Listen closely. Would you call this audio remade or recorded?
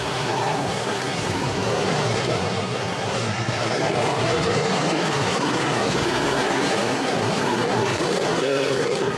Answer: remade